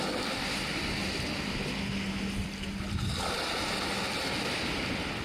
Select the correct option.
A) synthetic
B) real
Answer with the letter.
B